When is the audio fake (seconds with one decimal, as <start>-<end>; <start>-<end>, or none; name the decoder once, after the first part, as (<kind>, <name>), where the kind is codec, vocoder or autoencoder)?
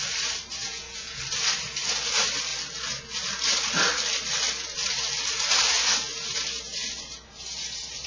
0.6-1.2 (vocoder, Vocos)